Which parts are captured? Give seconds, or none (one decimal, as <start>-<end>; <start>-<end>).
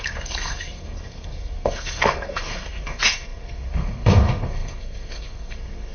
none